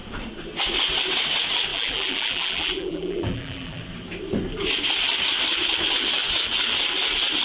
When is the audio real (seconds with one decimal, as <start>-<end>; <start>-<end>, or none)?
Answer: 0.0-1.7; 3.8-7.4